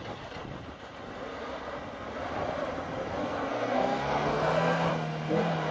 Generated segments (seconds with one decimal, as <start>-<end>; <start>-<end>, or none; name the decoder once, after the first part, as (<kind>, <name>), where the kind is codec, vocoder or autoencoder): 3.2-4.9 (codec, SNAC)